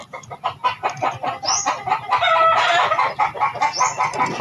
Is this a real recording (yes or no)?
yes